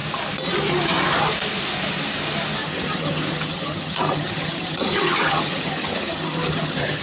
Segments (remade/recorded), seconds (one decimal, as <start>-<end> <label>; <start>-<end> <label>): 0.0-2.6 recorded; 2.6-7.0 remade